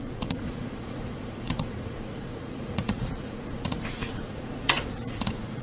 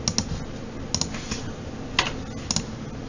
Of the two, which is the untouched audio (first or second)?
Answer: second